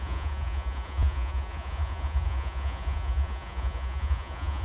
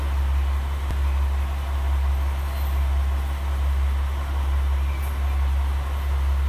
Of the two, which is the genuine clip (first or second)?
second